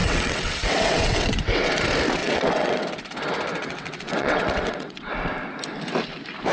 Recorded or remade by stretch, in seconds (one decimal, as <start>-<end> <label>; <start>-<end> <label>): 0.0-1.7 remade; 1.7-2.2 recorded; 2.2-2.8 remade; 2.8-3.5 recorded; 3.5-5.1 remade; 5.1-6.5 recorded